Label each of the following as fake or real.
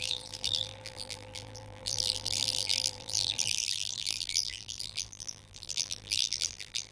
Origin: fake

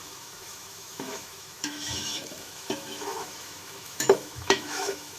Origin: fake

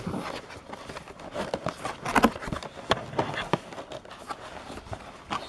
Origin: real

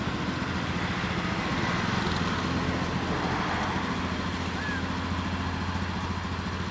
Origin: real